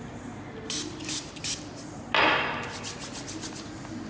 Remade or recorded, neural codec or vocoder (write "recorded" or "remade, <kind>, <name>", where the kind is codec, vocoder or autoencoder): recorded